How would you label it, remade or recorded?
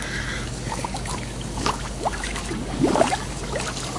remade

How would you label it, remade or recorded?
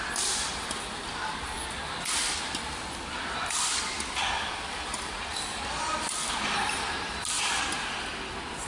recorded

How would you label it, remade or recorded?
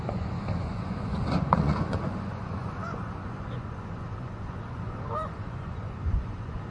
remade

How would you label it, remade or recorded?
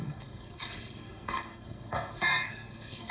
remade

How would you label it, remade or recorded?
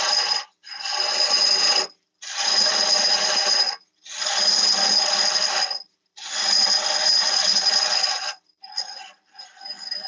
recorded